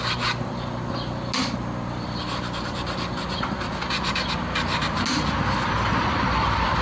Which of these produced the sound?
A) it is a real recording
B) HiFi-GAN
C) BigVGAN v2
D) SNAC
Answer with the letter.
A